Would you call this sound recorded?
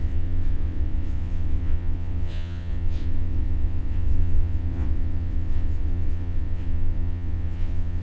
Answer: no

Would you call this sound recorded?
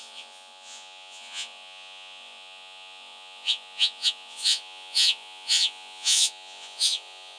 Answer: no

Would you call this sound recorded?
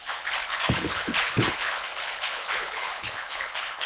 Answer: no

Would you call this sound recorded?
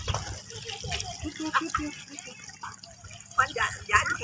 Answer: yes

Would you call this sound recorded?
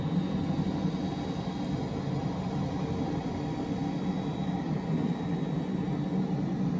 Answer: yes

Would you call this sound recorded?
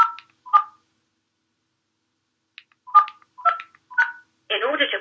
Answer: yes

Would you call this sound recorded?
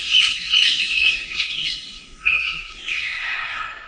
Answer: no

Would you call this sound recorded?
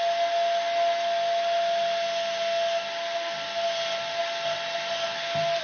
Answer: yes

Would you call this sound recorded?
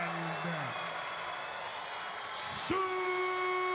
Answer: yes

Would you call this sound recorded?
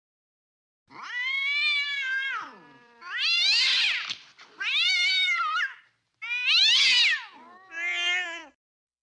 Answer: yes